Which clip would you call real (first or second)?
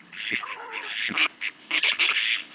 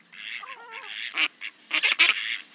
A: second